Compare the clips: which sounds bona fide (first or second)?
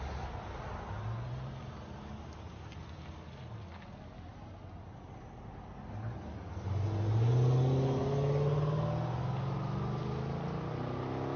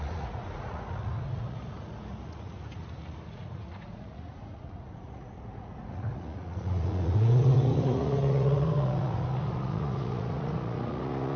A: first